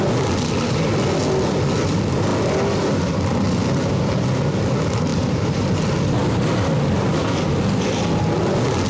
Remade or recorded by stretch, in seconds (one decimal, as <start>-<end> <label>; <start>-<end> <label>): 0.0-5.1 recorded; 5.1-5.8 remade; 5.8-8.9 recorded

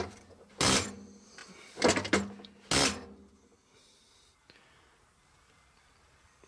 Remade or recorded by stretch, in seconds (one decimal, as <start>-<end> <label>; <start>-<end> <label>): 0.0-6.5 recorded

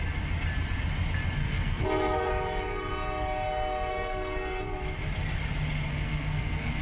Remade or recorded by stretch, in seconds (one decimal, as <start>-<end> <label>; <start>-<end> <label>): 0.0-1.4 recorded; 1.4-2.3 remade; 2.3-3.9 recorded; 3.9-4.6 remade; 4.6-5.9 recorded; 5.9-6.8 remade